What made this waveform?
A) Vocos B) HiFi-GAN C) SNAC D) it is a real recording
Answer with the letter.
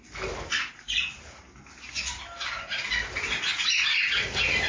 D